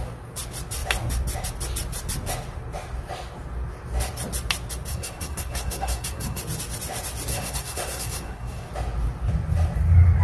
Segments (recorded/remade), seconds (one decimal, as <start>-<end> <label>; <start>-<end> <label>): 0.0-4.9 recorded; 4.9-6.4 remade; 6.4-7.3 recorded; 7.3-8.7 remade; 8.7-10.2 recorded